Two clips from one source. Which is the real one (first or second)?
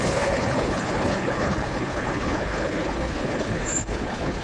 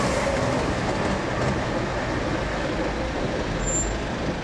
second